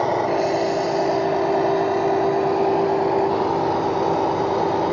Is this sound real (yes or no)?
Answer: yes